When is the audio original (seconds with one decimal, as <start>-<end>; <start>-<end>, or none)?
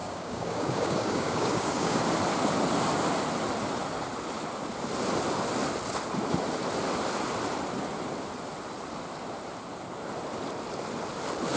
2.0-11.6